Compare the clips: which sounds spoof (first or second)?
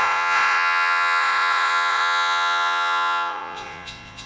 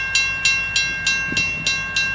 first